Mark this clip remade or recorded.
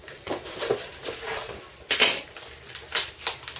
recorded